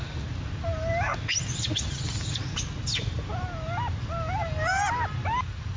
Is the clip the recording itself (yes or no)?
yes